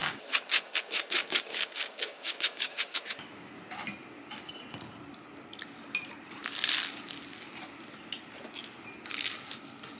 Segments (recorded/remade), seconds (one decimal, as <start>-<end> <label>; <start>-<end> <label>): 0.0-3.6 remade; 3.6-10.0 recorded